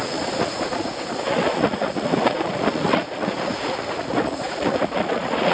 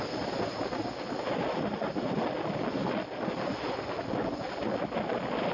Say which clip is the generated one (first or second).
first